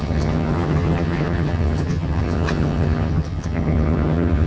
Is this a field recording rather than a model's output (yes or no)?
no